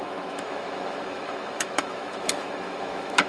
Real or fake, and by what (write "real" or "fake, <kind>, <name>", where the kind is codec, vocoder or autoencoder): fake, autoencoder, DAC-VAE